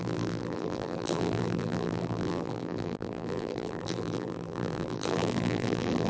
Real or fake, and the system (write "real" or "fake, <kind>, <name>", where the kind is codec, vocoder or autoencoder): fake, vocoder, BigVGAN v2